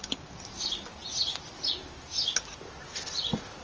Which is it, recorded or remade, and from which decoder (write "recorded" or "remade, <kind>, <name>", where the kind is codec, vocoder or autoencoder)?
recorded